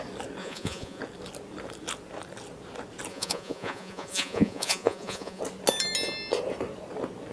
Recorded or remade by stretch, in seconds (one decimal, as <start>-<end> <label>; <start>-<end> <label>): 0.0-0.4 recorded; 0.4-1.0 remade; 1.0-3.1 recorded; 3.1-5.4 remade; 5.4-7.3 recorded